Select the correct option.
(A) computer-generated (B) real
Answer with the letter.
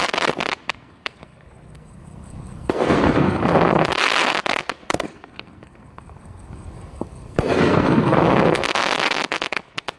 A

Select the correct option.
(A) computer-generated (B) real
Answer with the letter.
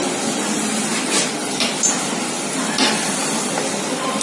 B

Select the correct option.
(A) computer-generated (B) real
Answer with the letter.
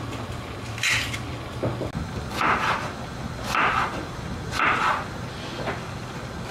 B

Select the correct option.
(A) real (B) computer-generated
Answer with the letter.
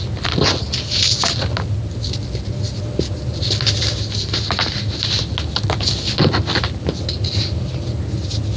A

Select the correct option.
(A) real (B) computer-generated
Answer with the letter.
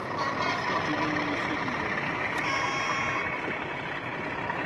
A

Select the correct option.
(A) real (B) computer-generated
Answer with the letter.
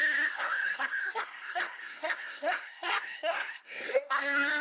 B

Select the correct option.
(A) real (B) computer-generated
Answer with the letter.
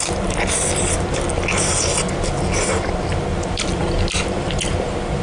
A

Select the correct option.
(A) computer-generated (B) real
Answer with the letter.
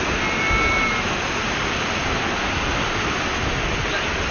B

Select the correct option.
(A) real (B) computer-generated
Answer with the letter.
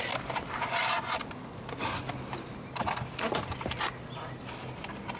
A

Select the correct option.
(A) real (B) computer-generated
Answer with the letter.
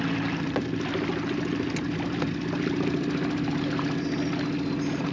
A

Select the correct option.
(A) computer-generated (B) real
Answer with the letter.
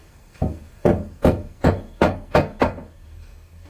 A